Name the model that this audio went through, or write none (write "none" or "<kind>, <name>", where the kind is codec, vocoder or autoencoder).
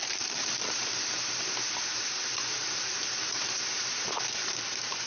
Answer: vocoder, BigVGAN v2